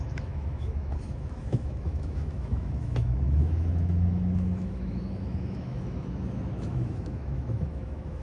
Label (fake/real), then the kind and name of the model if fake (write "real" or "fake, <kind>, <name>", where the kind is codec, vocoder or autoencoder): fake, autoencoder, DAC-VAE